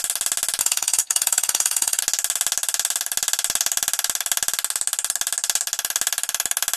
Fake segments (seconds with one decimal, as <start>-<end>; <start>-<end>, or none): 0.6-2.0